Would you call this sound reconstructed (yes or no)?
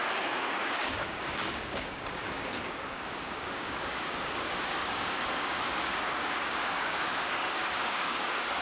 yes